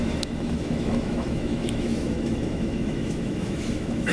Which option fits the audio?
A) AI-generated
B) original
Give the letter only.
A